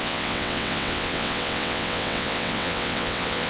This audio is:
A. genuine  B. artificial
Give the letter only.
B